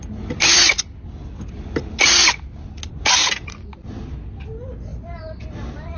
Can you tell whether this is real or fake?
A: real